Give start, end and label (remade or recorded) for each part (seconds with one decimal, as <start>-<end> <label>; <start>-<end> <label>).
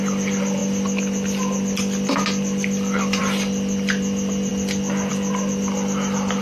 0.0-0.6 remade; 0.6-3.2 recorded; 3.2-4.5 remade; 4.5-5.1 recorded; 5.1-6.4 remade